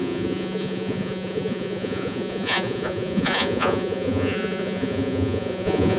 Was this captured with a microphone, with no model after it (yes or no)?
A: no